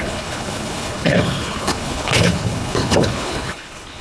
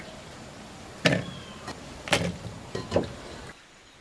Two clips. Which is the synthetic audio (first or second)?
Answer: first